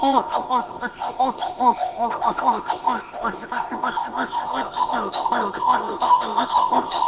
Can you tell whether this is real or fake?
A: fake